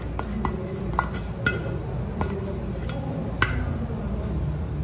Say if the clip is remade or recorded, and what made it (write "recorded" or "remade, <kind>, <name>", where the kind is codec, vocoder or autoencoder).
recorded